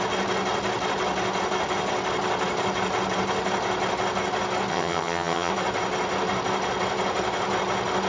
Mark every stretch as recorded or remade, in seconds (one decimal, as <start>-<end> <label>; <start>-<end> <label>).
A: 0.0-4.7 recorded; 4.7-5.5 remade; 5.5-8.1 recorded